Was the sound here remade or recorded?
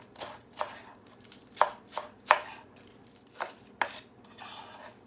recorded